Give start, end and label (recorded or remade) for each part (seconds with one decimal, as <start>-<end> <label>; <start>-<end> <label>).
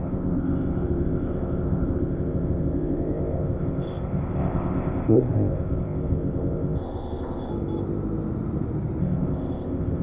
0.0-7.5 remade; 7.5-9.0 recorded; 9.0-10.0 remade